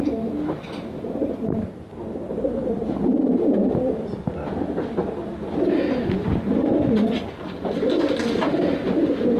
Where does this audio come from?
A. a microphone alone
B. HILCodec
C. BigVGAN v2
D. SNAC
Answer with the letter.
A